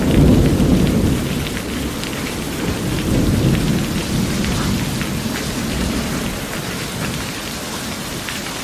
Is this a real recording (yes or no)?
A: yes